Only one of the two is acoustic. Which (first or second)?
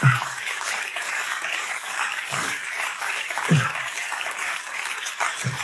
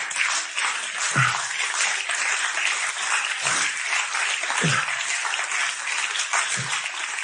second